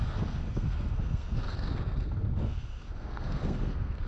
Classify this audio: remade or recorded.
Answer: remade